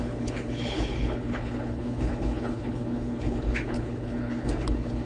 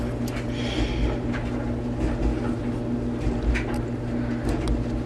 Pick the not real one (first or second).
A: first